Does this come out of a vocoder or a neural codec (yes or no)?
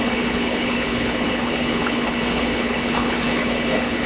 yes